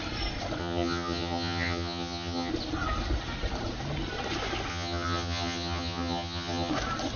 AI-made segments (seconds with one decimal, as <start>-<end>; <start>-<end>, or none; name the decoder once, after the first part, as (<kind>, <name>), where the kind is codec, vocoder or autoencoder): 0.6-2.5 (vocoder, HiFi-GAN); 4.7-6.7